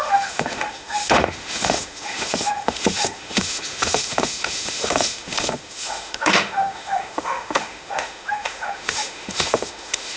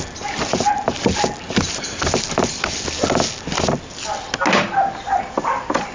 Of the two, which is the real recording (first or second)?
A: second